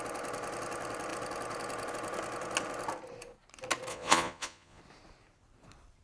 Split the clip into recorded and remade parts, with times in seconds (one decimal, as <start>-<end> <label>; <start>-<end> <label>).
0.0-3.9 recorded; 3.9-4.8 remade; 4.8-6.0 recorded